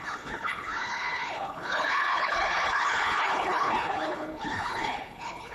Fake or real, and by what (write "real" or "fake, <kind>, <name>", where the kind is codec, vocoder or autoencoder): fake, codec, HILCodec